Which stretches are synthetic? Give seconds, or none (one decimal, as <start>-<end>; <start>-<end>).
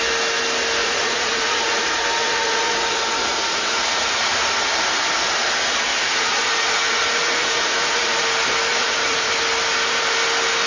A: 0.8-5.1; 5.9-8.2; 8.7-9.3